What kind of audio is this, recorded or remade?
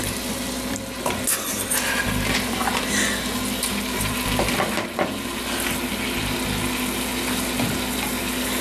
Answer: recorded